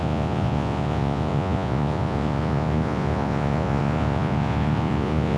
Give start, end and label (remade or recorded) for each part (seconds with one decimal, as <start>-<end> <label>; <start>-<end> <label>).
0.0-5.4 remade